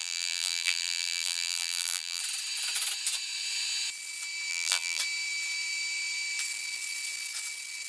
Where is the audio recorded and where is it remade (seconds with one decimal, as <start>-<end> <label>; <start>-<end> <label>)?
0.0-2.2 remade; 2.2-4.5 recorded; 4.5-5.0 remade; 5.0-7.9 recorded

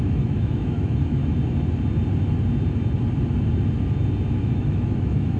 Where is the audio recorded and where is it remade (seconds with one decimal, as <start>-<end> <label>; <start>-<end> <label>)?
0.0-1.2 remade; 1.2-4.4 recorded; 4.4-5.4 remade

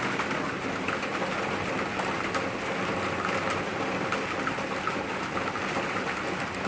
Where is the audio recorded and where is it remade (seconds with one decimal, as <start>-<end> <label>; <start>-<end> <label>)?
0.0-6.7 recorded

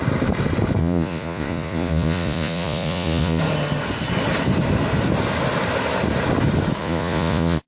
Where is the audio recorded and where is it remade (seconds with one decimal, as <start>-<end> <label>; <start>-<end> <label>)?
0.0-0.8 recorded; 0.8-3.4 remade; 3.4-6.8 recorded; 6.8-7.7 remade

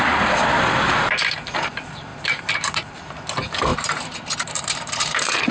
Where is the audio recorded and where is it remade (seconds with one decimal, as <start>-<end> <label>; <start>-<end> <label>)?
0.0-2.1 recorded; 2.1-3.1 remade; 3.1-3.7 recorded; 3.7-5.5 remade

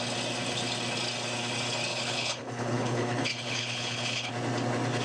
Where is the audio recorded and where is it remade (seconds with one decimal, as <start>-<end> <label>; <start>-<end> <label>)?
0.0-1.9 recorded; 1.9-4.3 remade; 4.3-5.0 recorded

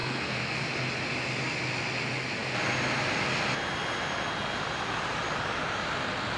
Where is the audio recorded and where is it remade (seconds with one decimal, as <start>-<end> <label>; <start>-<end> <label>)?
0.0-0.6 remade; 0.6-6.4 recorded

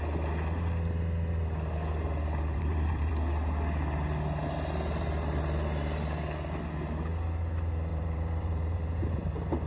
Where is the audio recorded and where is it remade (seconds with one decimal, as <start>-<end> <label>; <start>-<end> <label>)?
0.0-2.5 recorded; 2.5-3.1 remade; 3.1-7.9 recorded; 7.9-8.8 remade; 8.8-9.7 recorded